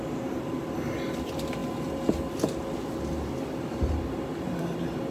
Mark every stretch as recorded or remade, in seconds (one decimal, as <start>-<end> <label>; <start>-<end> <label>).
0.0-5.1 recorded